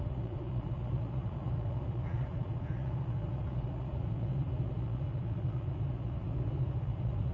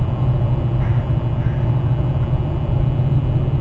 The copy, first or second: first